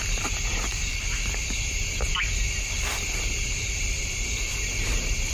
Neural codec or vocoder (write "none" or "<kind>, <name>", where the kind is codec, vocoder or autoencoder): vocoder, BigVGAN v2